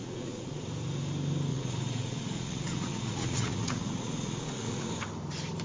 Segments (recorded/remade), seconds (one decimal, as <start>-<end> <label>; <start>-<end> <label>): 0.0-0.6 remade; 0.6-1.5 recorded; 1.5-4.9 remade; 4.9-5.6 recorded